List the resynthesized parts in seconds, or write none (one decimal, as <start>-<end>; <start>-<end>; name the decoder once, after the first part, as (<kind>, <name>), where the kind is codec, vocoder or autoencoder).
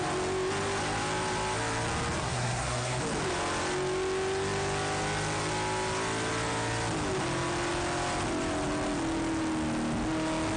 2.2-3.0 (codec, SNAC)